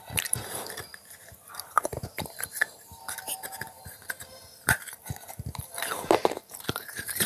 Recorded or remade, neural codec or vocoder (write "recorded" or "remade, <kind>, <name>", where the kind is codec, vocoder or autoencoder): remade, vocoder, BigVGAN v2